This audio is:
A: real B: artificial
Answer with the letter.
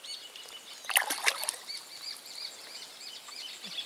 A